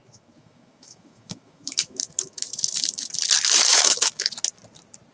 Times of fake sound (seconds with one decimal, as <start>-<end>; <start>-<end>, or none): 0.0-3.1; 3.7-4.3

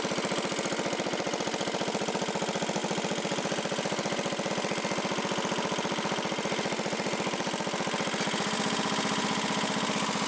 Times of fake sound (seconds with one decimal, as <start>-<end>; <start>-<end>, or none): none

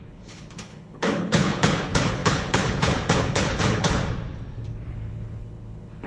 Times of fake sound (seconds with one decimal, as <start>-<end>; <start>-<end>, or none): 0.0-4.0; 4.9-6.1

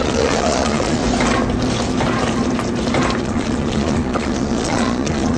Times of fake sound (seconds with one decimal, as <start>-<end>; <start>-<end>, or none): 0.0-1.0; 3.2-5.4

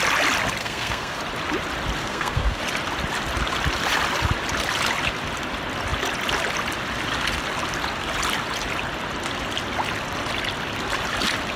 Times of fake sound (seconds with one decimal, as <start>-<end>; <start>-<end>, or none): 0.6-1.2; 2.0-2.6